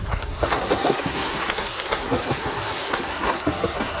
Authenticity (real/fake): fake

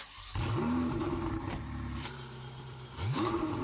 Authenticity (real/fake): fake